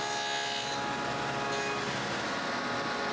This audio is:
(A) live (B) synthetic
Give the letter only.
A